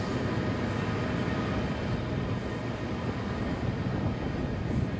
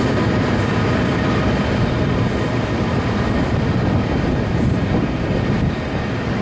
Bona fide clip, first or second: first